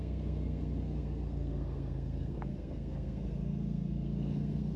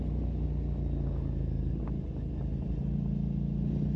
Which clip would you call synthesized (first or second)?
first